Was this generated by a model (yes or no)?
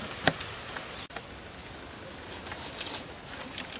no